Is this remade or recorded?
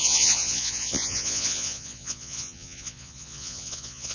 remade